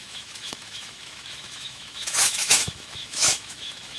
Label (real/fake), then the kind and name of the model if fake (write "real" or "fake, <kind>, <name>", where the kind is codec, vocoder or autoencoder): fake, autoencoder, DAC-VAE